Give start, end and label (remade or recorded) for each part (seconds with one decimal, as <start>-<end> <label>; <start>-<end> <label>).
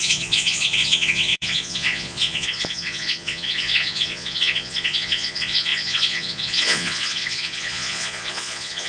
0.0-8.9 remade